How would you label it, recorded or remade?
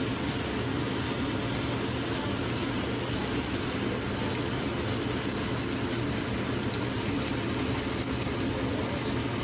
recorded